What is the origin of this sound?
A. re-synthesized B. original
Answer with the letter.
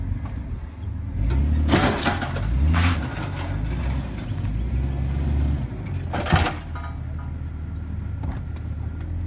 B